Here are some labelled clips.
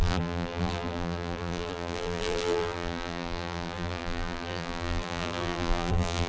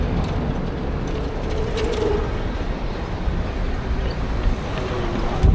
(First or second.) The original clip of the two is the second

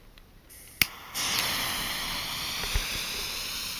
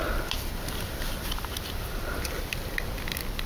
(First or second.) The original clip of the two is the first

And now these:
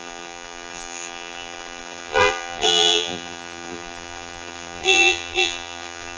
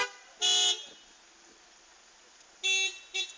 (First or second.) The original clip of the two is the second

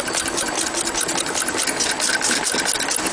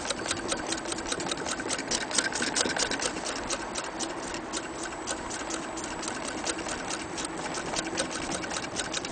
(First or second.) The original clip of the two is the first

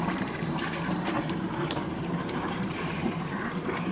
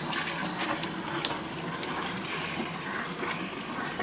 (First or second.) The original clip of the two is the second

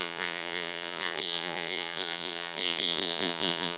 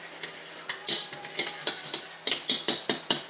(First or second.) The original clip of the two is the second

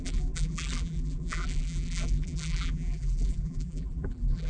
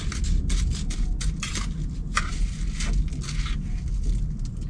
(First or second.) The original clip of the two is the second